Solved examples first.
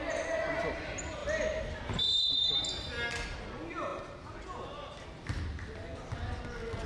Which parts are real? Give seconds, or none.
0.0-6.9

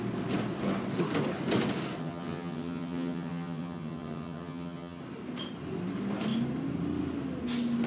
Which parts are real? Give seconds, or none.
0.0-2.0; 5.0-7.9

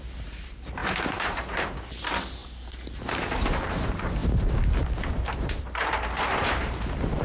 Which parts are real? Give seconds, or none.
4.2-5.1

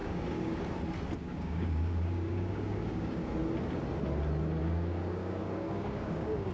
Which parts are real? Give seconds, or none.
0.6-1.2; 3.3-4.6

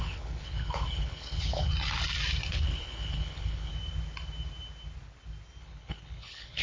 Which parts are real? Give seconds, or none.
1.7-2.5; 3.7-5.6

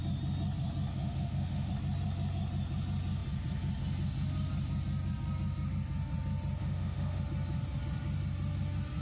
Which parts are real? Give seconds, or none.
0.0-0.9; 1.7-6.6; 7.2-9.0

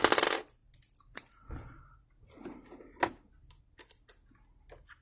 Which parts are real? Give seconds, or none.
0.0-5.0